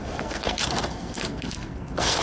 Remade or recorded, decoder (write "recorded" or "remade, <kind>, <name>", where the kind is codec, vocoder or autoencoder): remade, codec, SNAC